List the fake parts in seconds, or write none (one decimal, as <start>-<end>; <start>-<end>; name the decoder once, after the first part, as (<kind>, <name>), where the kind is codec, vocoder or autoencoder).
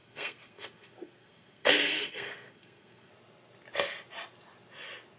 0.0-3.1 (codec, SNAC)